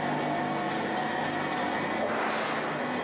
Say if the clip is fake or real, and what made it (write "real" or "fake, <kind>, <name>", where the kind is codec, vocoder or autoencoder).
real